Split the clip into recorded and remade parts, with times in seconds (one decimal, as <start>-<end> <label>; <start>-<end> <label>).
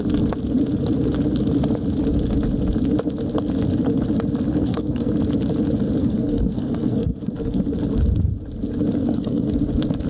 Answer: 0.0-4.5 recorded; 4.5-5.1 remade; 5.1-6.0 recorded; 6.0-7.6 remade; 7.6-9.0 recorded; 9.0-9.5 remade; 9.5-10.1 recorded